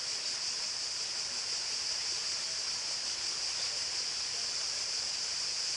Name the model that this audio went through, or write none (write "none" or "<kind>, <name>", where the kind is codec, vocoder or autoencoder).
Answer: none